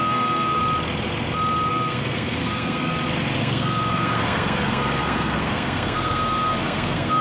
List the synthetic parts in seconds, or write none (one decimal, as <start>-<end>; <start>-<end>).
0.0-0.6; 1.7-2.9; 3.4-7.2